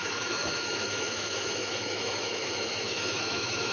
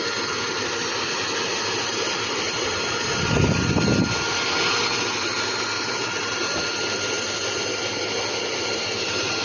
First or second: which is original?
second